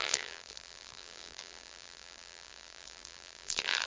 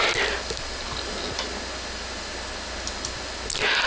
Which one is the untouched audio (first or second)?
second